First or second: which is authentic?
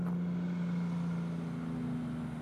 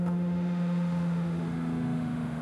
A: first